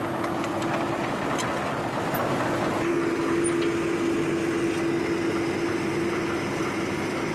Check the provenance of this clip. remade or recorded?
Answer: recorded